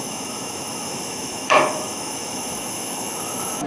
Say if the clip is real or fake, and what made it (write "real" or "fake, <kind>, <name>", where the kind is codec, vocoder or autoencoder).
fake, autoencoder, DAC-VAE